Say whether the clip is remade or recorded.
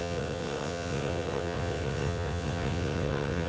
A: remade